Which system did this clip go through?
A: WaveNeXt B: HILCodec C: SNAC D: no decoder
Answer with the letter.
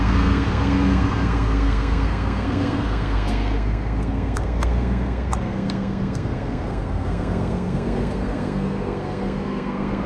C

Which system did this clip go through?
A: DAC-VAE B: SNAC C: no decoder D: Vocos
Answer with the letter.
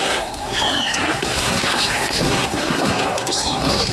B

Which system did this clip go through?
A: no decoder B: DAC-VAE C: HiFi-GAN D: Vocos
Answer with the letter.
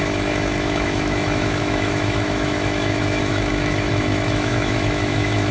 B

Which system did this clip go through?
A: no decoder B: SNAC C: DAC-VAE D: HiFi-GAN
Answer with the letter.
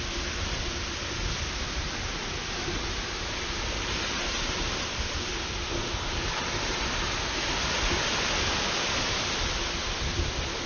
A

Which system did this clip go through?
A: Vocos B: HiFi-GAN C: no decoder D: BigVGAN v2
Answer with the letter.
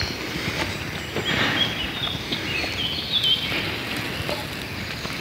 C